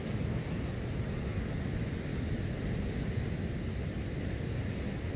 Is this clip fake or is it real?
real